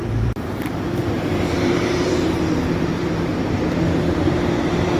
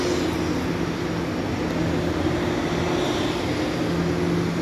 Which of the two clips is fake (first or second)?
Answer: first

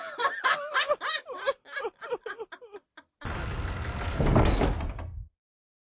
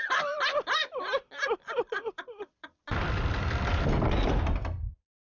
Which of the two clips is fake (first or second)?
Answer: second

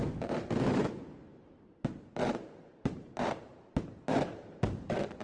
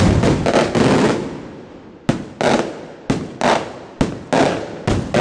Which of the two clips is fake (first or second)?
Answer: first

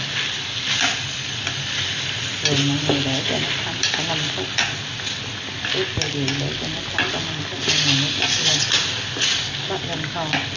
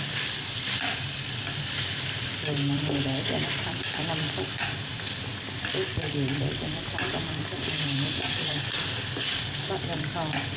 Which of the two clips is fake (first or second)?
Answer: second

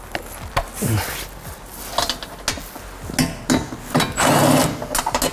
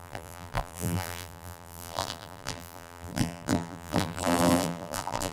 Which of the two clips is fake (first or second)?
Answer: second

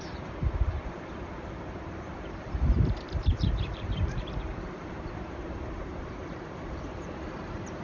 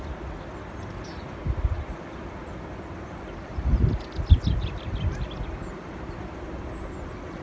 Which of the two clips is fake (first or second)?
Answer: first